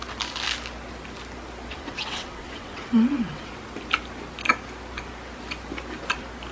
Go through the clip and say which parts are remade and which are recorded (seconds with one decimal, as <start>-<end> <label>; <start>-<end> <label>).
0.0-1.7 recorded; 1.7-3.5 remade; 3.5-6.5 recorded